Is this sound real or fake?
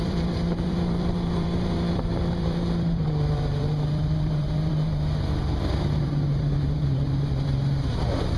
fake